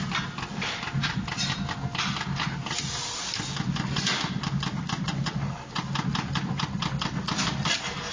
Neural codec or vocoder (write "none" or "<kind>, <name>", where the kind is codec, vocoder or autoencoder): none